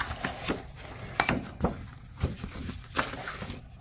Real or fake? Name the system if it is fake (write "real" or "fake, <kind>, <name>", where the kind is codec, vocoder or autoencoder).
real